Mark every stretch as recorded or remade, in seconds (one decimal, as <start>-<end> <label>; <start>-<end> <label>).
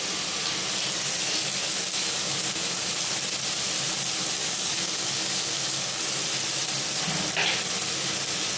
0.0-1.6 recorded; 1.6-2.9 remade; 2.9-4.4 recorded; 4.4-6.0 remade; 6.0-8.6 recorded